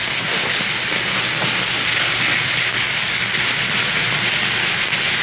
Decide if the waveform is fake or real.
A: real